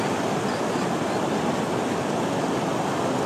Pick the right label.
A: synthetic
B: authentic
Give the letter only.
B